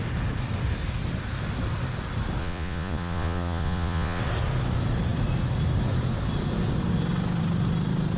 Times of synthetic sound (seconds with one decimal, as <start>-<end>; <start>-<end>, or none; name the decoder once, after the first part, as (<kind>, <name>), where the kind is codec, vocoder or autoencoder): 2.4-4.2 (vocoder, Vocos)